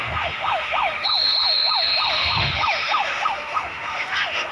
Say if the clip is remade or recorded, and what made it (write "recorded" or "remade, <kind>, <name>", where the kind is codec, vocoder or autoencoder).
remade, autoencoder, DAC-VAE